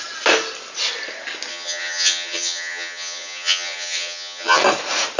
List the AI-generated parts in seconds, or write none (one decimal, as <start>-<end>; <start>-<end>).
1.5-4.6